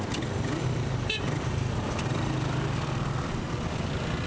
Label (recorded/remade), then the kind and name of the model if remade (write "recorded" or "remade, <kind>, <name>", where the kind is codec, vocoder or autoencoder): recorded